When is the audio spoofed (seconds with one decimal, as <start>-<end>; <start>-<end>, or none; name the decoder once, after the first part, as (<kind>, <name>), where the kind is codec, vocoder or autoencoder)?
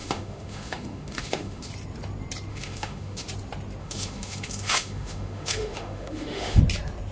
0.0-1.7 (autoencoder, DAC-VAE); 2.5-3.3; 3.8-6.6